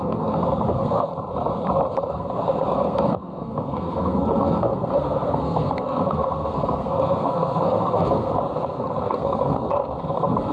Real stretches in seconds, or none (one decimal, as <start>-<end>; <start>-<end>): 1.1-2.1

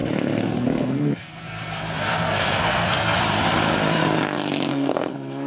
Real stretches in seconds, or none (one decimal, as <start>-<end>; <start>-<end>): 3.2-4.7